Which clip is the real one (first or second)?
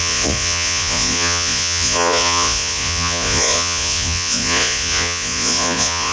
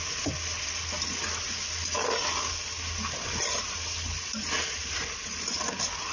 second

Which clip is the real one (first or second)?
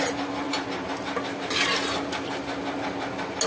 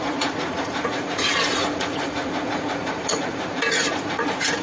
first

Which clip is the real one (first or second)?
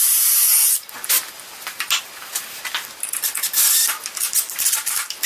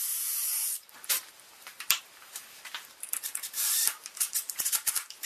first